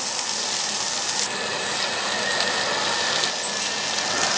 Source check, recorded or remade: recorded